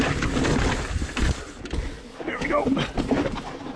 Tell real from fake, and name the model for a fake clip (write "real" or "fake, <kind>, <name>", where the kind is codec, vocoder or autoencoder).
real